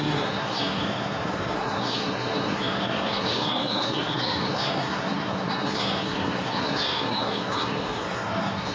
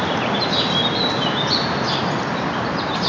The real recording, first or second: second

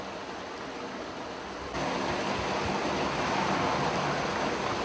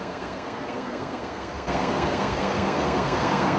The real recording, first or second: first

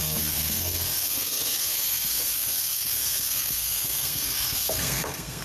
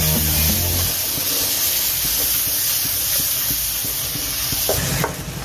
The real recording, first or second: second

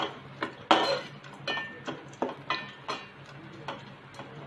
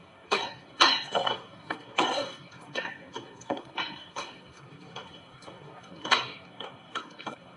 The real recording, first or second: first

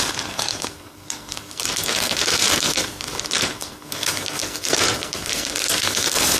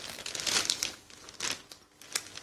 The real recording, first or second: second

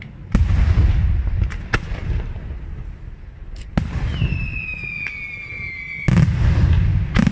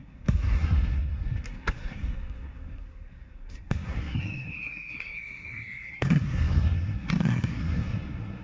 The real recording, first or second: first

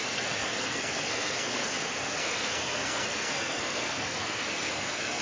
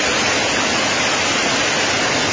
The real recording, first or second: second